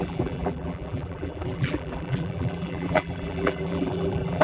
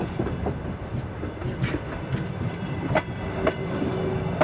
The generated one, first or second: first